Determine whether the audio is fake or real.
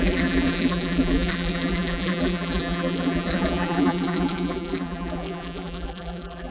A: fake